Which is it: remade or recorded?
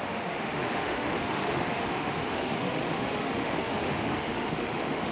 remade